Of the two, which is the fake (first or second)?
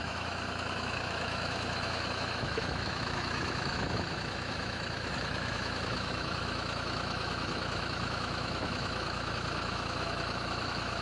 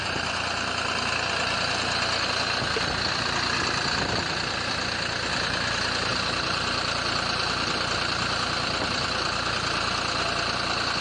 first